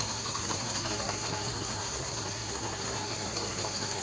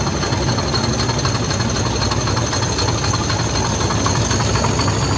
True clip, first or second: second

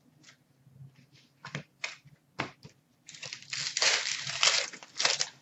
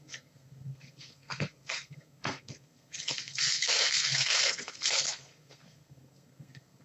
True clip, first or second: first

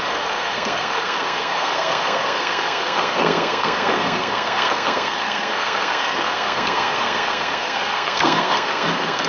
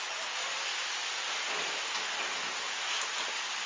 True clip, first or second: second